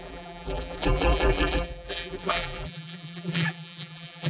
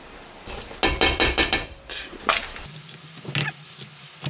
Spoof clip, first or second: first